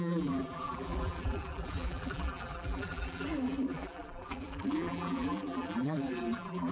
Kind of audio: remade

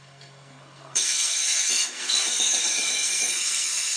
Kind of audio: remade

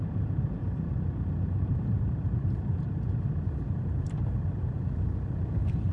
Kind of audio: remade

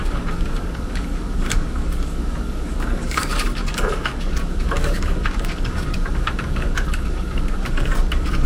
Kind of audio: remade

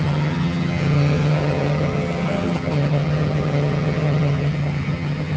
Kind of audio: remade